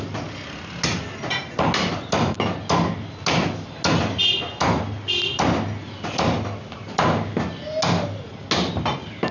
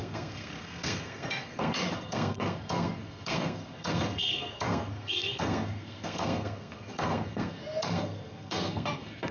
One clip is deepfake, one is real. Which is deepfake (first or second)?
second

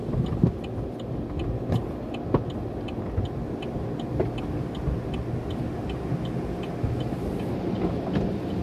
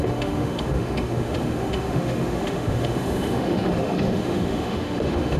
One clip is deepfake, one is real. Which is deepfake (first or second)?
second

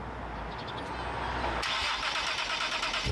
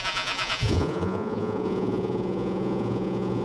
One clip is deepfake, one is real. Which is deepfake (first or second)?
second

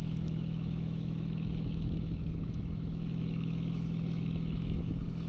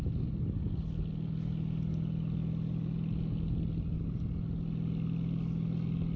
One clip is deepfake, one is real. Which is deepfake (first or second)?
first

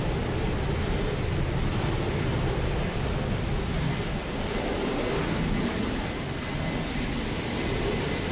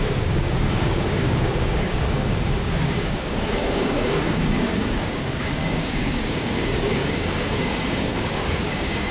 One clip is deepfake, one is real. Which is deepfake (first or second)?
second